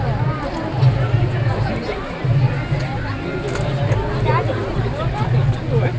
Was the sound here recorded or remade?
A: recorded